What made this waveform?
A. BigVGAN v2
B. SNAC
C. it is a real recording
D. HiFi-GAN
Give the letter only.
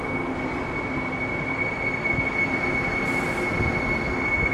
C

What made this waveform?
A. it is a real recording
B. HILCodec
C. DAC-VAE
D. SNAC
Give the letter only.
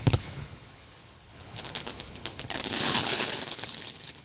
B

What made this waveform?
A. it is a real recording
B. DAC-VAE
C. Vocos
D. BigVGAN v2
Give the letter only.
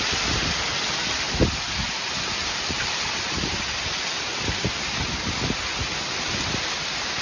A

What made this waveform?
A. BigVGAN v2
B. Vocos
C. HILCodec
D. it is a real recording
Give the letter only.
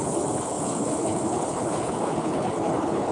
C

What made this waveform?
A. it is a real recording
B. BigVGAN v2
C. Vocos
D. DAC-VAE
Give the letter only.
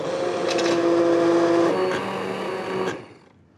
A